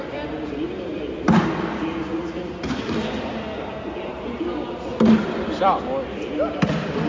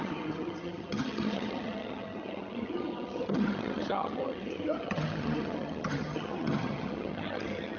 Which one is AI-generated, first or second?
second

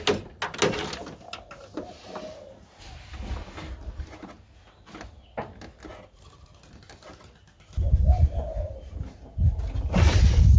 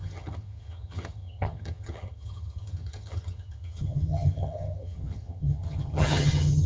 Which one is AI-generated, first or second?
second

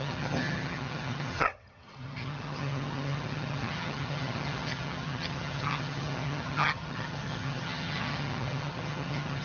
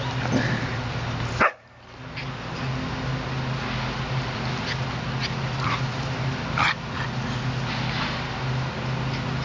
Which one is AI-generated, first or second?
first